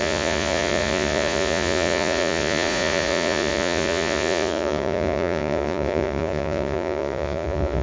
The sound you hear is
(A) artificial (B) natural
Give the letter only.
A